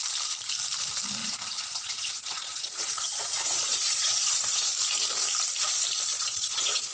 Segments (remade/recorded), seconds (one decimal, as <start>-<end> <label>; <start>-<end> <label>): 0.0-1.2 recorded; 1.2-4.7 remade; 4.7-6.1 recorded; 6.1-6.9 remade